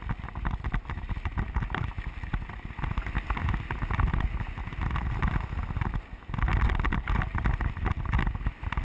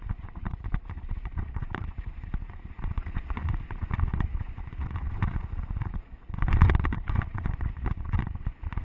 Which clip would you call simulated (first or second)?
second